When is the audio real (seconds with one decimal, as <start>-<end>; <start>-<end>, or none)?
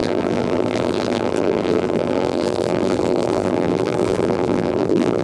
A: none